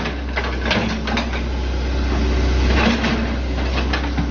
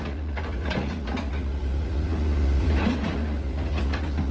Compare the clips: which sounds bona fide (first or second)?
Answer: first